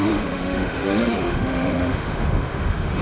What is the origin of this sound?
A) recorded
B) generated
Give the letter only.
B